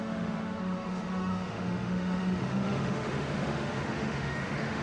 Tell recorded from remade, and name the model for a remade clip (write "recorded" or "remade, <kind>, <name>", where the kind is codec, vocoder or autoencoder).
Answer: remade, autoencoder, DAC-VAE